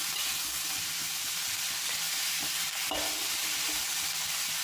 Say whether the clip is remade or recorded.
recorded